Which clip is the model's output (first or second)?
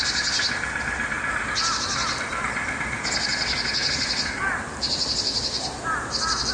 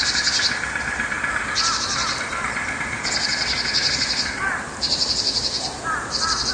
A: second